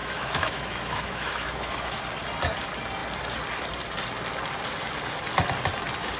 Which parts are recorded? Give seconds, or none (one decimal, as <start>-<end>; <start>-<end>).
2.0-6.2